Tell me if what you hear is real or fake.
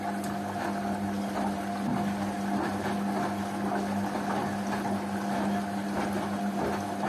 real